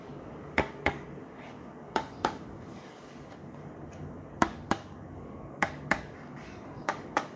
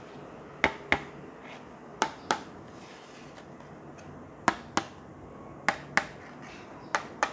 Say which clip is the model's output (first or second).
first